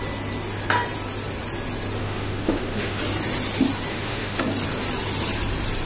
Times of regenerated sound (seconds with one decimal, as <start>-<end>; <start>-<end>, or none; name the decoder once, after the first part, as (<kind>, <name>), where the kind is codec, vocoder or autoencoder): 2.0-3.0 (autoencoder, DAC-VAE); 3.9-4.4